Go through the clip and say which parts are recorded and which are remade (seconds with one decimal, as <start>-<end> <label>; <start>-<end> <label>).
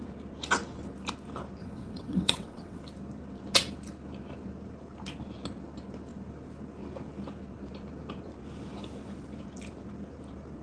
0.0-1.6 recorded; 1.6-2.8 remade; 2.8-10.6 recorded